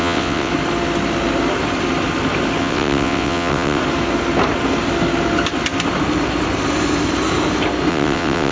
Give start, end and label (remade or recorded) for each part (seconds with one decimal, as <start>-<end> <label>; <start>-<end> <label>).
0.0-0.5 remade; 0.5-2.6 recorded; 2.6-3.8 remade; 3.8-7.9 recorded; 7.9-8.5 remade